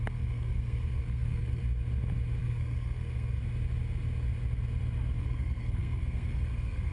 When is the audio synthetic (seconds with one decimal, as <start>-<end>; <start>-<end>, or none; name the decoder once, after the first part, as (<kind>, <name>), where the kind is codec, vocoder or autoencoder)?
0.0-1.6 (codec, SNAC); 2.4-3.4; 5.2-6.9